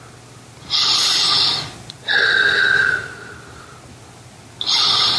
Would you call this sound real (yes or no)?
yes